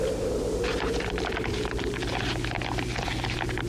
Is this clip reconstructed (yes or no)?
no